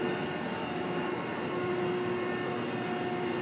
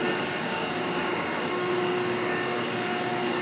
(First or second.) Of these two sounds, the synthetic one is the second